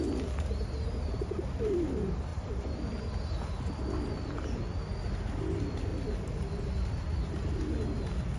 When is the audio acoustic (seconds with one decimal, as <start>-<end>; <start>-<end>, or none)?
0.0-5.9; 7.7-8.4